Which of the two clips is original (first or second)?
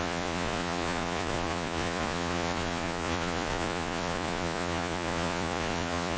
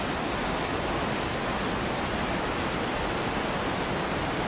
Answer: second